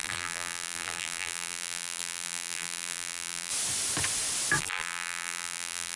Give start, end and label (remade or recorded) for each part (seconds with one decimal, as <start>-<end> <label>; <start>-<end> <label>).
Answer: 0.0-3.5 remade; 3.5-4.6 recorded; 4.6-6.0 remade